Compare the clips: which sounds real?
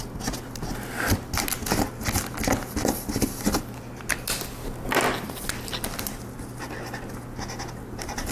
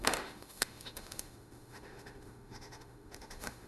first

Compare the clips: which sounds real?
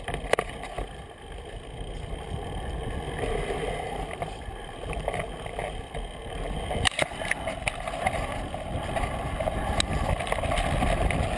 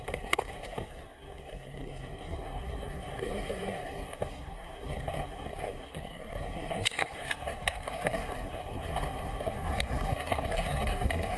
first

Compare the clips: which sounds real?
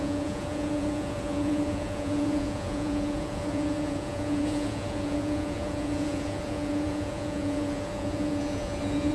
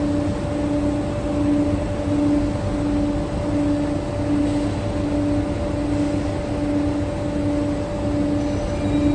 second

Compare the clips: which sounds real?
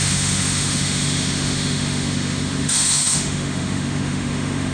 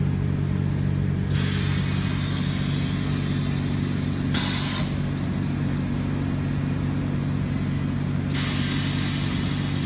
second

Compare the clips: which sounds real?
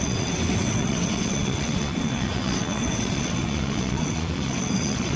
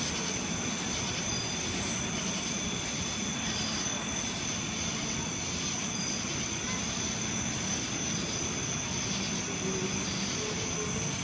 second